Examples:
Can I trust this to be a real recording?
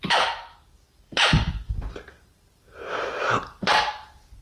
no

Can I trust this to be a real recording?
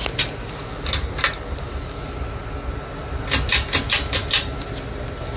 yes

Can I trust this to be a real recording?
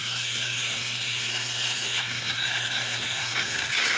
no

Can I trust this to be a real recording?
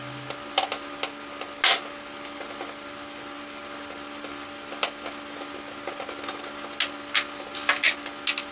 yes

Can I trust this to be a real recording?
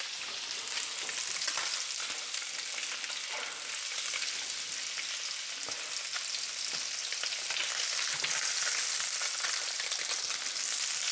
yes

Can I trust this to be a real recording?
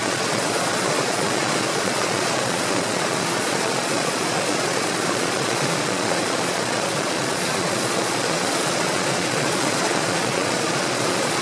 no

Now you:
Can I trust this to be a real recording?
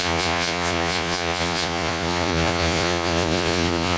no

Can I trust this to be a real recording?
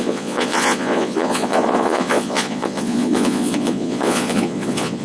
no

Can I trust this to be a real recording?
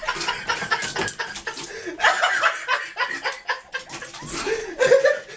yes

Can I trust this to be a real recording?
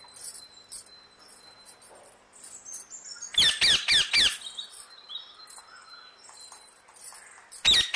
yes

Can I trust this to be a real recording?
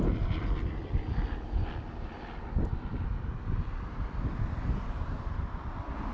yes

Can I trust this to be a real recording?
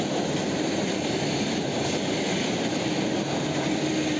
yes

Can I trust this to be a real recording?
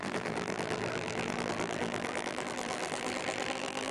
no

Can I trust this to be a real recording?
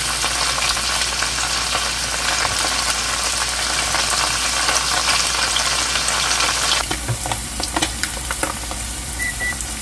no